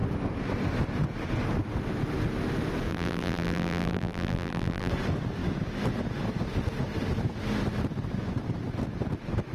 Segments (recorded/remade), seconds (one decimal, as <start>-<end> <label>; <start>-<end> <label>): 0.0-2.9 recorded; 2.9-4.9 remade; 4.9-9.5 recorded